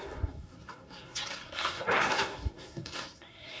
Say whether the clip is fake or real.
fake